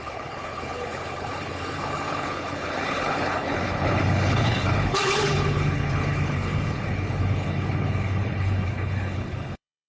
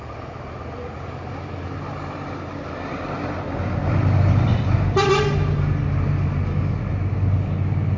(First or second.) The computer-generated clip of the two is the first